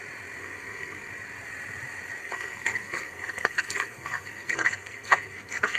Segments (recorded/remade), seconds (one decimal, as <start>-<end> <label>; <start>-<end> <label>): 0.0-0.4 recorded; 0.4-1.1 remade; 1.1-2.2 recorded; 2.2-5.8 remade

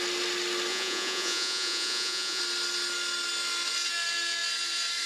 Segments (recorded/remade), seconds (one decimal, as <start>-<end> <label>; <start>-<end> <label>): 0.0-0.7 recorded; 0.7-2.4 remade; 2.4-5.1 recorded

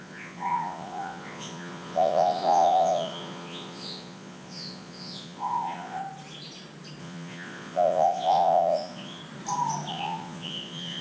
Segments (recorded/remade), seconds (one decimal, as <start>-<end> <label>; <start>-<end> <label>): 0.0-6.0 remade; 6.0-7.0 recorded; 7.0-9.2 remade; 9.2-9.9 recorded; 9.9-11.0 remade

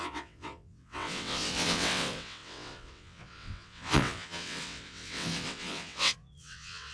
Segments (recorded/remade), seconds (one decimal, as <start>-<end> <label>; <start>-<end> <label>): 0.0-6.9 remade

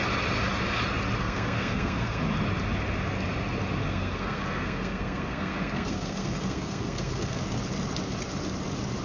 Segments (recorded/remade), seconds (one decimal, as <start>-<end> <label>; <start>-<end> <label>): 0.0-1.2 recorded; 1.2-2.2 remade; 2.2-3.8 recorded; 3.8-7.4 remade; 7.4-9.0 recorded

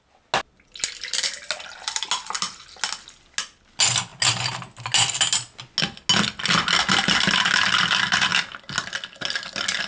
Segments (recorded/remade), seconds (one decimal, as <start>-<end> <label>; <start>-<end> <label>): 0.0-9.9 recorded

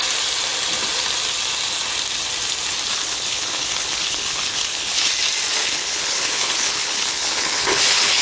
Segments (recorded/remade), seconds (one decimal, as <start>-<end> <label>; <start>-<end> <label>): 0.0-2.9 recorded; 2.9-5.1 remade; 5.1-5.6 recorded; 5.6-8.2 remade